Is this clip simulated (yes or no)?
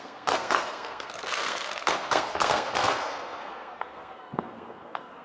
yes